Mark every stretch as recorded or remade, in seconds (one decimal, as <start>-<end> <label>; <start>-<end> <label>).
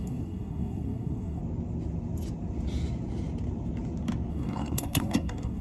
0.0-1.4 remade; 1.4-4.3 recorded; 4.3-5.6 remade